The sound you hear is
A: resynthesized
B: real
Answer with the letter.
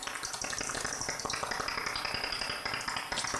B